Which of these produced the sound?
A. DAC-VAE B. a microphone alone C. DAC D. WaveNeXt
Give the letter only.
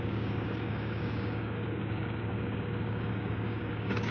C